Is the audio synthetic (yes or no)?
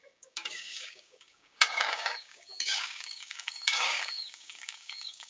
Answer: yes